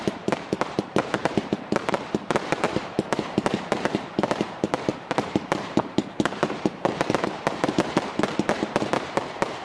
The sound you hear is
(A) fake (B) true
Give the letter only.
A